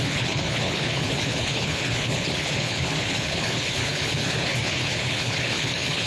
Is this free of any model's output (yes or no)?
no